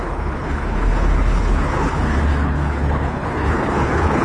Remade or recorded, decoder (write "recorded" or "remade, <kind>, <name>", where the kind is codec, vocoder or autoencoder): remade, codec, HILCodec